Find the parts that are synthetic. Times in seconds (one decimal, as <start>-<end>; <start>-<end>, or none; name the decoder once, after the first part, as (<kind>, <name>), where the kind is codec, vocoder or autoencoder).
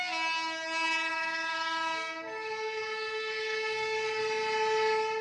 1.1-4.2 (codec, DAC)